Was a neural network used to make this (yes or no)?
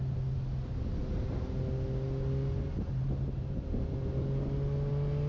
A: no